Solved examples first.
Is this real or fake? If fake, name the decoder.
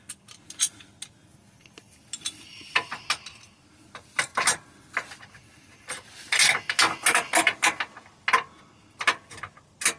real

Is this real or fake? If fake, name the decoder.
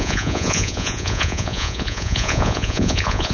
fake, vocoder, Vocos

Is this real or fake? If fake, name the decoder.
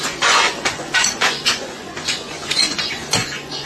fake, vocoder, Vocos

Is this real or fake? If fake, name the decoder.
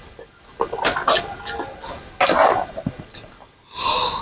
real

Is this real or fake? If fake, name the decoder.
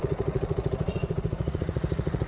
fake, vocoder, Vocos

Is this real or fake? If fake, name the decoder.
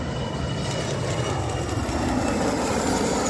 real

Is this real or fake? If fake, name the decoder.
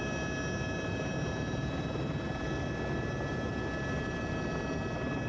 real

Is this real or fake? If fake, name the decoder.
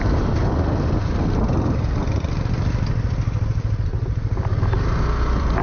real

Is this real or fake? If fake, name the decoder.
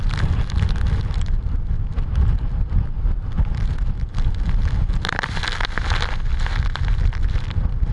real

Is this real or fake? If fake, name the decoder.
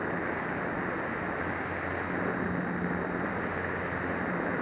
real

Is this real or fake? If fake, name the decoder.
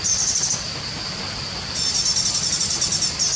real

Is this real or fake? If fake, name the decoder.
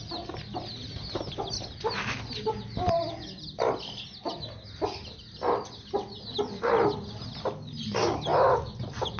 real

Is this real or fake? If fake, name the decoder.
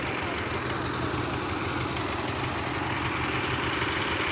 real